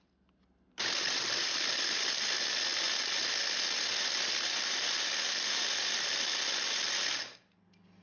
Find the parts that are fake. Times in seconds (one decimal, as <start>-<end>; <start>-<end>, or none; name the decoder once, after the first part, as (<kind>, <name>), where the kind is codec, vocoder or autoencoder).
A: none